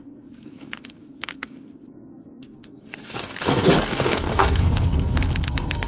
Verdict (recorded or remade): remade